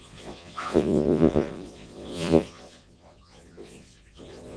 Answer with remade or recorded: remade